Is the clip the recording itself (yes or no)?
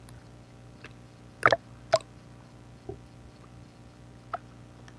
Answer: yes